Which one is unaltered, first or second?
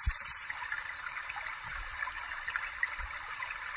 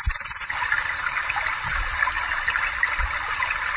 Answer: second